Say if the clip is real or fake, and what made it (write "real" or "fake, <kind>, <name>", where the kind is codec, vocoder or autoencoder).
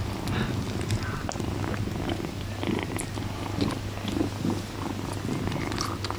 real